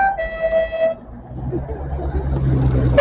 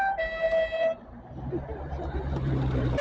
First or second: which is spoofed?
second